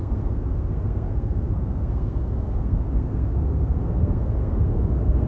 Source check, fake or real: fake